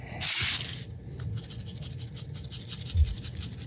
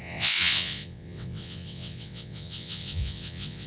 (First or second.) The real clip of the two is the first